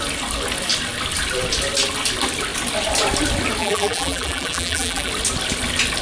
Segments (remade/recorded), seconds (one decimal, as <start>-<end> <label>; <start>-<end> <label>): 0.0-3.6 recorded; 3.6-5.1 remade; 5.1-6.0 recorded